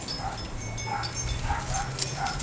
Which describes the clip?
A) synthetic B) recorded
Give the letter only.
B